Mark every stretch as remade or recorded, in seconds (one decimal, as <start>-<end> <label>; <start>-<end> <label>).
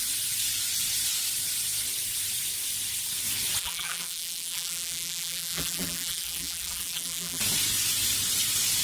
0.0-3.6 recorded; 3.6-7.4 remade; 7.4-8.8 recorded